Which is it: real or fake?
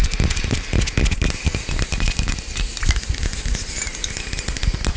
real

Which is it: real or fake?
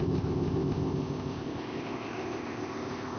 fake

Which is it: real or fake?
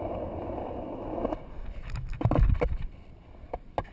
real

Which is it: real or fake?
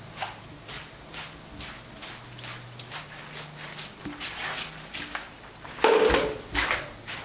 real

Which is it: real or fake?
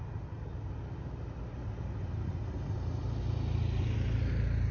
real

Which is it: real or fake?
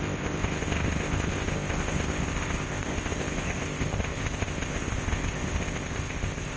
fake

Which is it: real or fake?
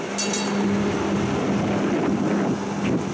real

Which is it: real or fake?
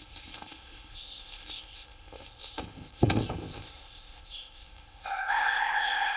fake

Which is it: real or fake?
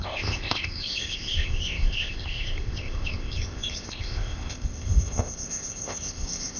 fake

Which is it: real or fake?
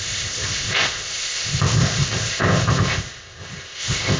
fake